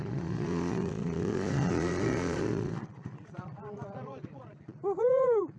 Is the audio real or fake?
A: fake